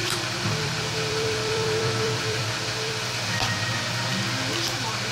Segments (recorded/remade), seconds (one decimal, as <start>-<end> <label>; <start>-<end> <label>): 0.0-3.1 remade; 3.1-5.1 recorded